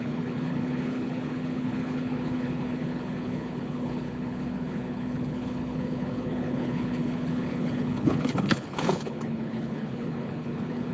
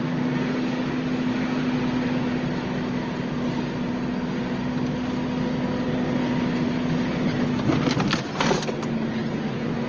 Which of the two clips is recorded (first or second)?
second